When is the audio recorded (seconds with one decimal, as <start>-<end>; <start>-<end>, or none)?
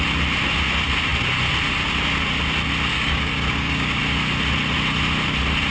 0.0-2.9; 4.0-5.7